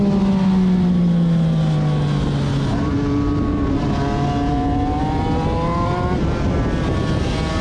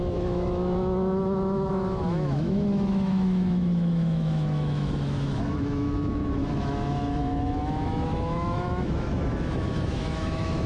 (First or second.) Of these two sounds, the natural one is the first